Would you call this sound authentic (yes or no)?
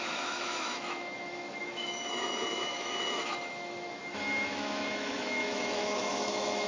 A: no